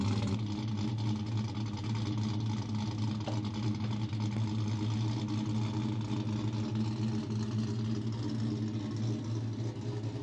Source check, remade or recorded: recorded